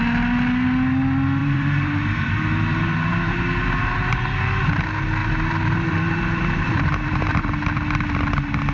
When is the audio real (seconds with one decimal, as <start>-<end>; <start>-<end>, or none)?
0.0-1.4; 4.4-5.2; 7.5-8.7